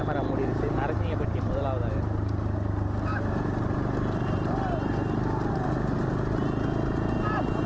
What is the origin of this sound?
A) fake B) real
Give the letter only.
B